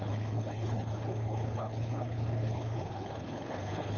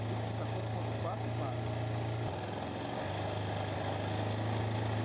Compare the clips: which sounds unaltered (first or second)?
second